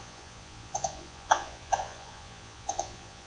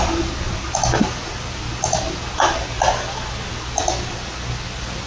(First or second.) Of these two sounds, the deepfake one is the first